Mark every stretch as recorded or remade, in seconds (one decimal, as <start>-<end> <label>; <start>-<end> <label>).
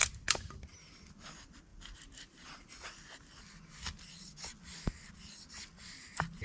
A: 0.0-6.4 recorded